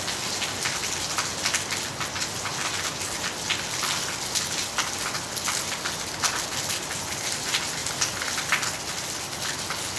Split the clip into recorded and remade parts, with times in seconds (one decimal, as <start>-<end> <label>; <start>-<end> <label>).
0.0-10.0 recorded